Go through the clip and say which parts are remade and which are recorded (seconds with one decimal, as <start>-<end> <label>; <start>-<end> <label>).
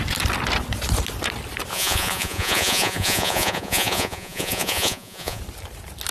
0.0-1.7 recorded; 1.7-5.4 remade; 5.4-6.1 recorded